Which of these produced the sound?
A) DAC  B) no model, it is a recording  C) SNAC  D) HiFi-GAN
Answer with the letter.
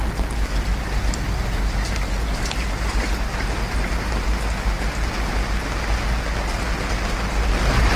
B